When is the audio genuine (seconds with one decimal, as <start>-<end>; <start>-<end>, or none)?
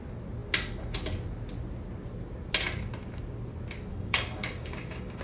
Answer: 0.0-3.9